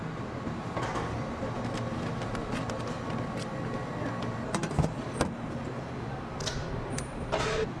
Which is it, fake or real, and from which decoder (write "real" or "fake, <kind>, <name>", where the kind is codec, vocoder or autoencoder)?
real